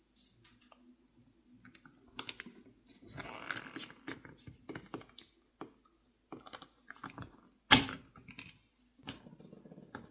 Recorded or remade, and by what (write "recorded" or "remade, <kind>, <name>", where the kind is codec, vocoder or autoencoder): recorded